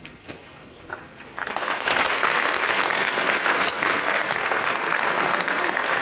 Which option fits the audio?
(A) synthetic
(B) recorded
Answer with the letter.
A